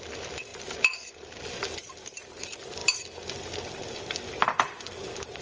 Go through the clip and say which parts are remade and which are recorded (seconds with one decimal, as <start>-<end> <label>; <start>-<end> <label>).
0.0-5.4 recorded